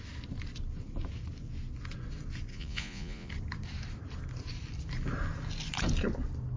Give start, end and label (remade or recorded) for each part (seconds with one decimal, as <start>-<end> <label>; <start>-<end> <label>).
0.0-2.5 recorded; 2.5-3.3 remade; 3.3-6.6 recorded